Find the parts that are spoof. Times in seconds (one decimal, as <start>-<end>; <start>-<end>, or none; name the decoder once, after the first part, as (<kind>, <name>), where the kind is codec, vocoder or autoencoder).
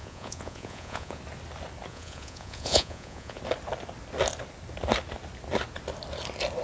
0.0-1.2 (vocoder, Vocos); 1.9-3.4